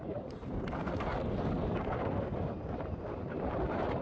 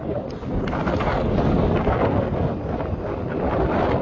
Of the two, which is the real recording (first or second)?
second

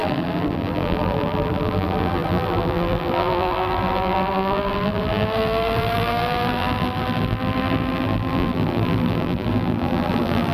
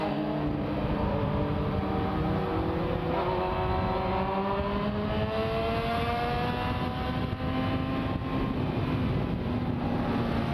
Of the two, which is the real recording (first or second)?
second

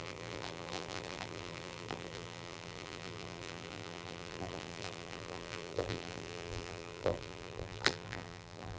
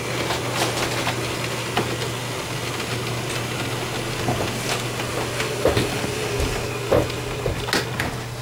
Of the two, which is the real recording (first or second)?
second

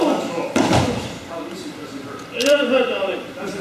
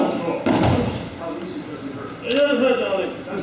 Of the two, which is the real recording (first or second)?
second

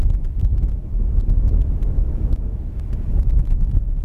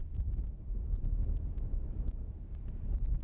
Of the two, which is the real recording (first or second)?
first